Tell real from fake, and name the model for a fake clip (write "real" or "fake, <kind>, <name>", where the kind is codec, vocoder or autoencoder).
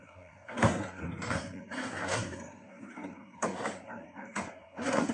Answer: fake, codec, SNAC